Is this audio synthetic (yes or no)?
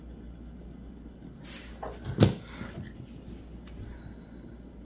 no